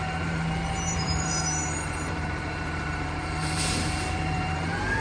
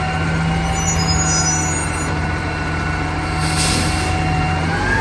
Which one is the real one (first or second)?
second